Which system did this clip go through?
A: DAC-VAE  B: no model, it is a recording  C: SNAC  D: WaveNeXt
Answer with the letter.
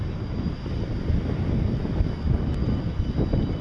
B